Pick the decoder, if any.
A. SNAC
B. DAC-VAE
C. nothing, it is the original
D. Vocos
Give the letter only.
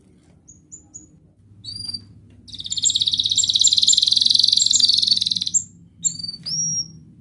C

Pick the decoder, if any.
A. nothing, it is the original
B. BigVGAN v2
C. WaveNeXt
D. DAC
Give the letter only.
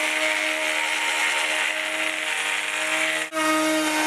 A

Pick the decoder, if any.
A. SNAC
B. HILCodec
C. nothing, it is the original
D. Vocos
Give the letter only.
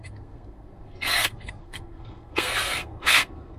A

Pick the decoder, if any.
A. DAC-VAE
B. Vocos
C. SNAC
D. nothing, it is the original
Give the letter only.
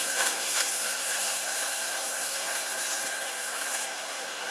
C